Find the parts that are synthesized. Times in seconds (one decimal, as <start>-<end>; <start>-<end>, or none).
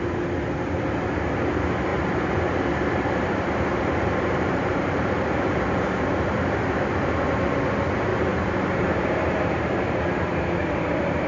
1.9-5.9; 8.1-9.9; 10.6-11.3